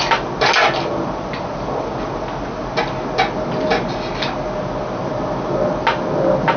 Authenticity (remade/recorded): recorded